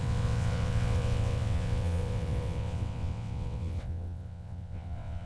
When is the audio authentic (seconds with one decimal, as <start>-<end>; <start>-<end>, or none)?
none